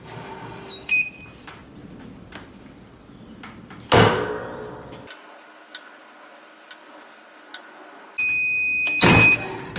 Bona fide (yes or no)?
yes